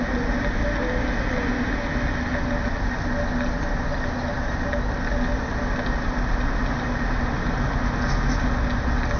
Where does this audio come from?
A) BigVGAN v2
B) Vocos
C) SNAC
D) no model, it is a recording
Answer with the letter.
D